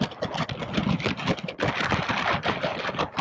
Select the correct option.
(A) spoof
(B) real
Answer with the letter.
B